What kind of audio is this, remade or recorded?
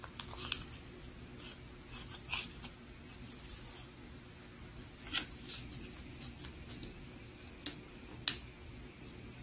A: recorded